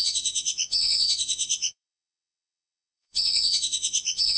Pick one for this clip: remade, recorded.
remade